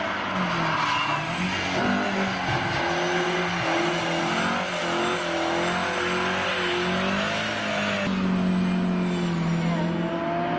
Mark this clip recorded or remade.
recorded